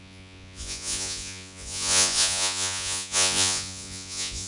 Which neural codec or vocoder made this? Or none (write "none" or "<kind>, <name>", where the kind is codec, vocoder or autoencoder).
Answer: vocoder, Vocos